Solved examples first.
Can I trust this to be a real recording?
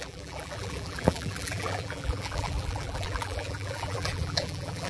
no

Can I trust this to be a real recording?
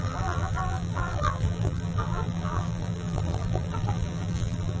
no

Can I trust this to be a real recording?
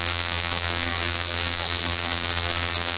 no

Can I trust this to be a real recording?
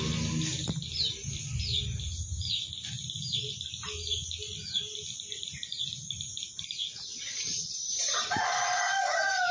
yes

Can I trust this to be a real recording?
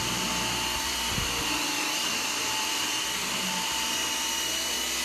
no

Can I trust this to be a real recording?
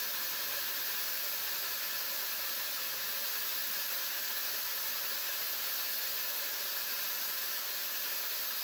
yes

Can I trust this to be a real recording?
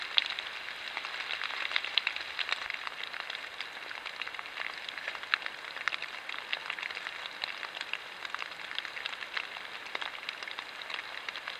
yes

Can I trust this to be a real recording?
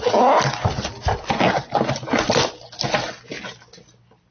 yes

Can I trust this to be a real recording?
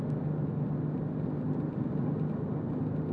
yes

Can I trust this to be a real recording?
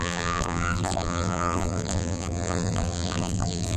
no